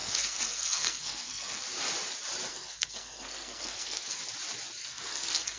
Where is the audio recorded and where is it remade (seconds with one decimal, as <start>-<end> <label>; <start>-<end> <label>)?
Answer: 0.0-1.6 remade; 1.6-2.5 recorded; 2.5-4.2 remade; 4.2-4.8 recorded; 4.8-5.6 remade